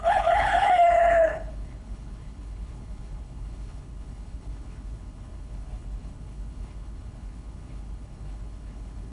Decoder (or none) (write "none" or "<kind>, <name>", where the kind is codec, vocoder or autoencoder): codec, HILCodec